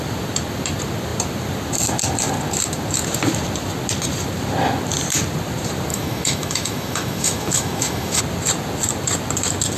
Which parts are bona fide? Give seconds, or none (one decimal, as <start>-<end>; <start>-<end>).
0.0-5.9; 8.2-9.8